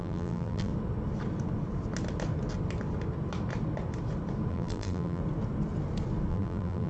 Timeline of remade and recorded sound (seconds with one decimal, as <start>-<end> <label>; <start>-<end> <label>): 0.0-0.7 remade; 0.7-4.5 recorded; 4.5-5.2 remade; 5.2-6.3 recorded; 6.3-6.9 remade